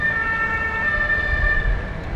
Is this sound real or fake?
real